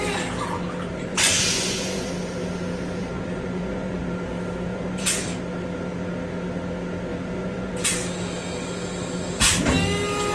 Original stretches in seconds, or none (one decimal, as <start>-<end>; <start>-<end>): 0.0-1.1; 2.1-3.0; 4.0-4.7; 5.2-7.1; 7.7-10.3